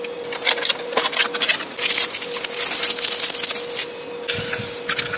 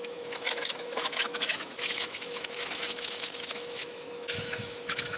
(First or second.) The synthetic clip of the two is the second